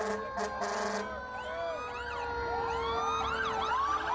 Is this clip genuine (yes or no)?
yes